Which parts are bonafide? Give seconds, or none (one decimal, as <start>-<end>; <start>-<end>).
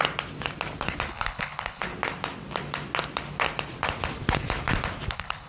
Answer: 0.0-1.1; 1.8-5.1